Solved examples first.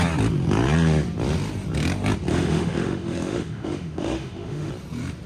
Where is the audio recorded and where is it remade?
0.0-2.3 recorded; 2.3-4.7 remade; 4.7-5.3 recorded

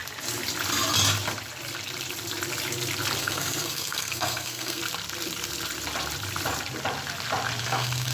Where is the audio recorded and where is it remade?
0.0-3.2 recorded; 3.2-4.8 remade; 4.8-7.6 recorded; 7.6-8.1 remade

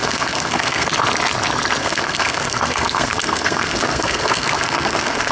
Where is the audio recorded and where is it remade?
0.0-0.9 remade; 0.9-1.8 recorded; 1.8-5.3 remade

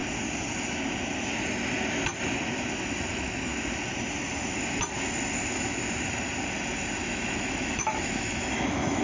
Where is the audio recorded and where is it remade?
0.0-3.1 recorded; 3.1-3.5 remade; 3.5-7.0 recorded; 7.0-9.0 remade

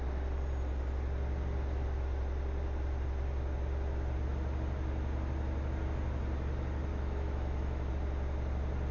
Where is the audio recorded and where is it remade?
0.0-6.9 recorded; 6.9-7.9 remade; 7.9-8.9 recorded